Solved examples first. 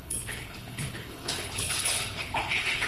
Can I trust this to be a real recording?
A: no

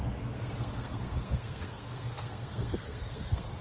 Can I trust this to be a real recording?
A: no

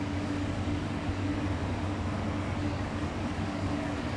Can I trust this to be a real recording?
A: no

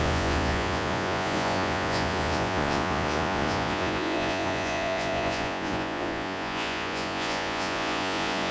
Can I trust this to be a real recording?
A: no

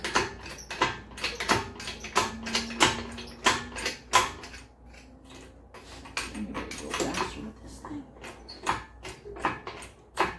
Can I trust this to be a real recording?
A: yes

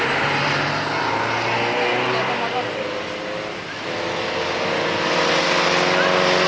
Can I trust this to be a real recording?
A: yes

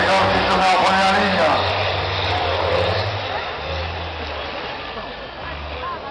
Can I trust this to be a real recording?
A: yes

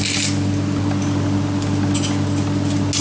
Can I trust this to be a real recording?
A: yes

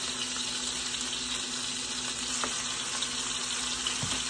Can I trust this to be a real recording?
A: yes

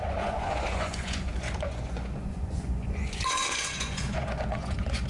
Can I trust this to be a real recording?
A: no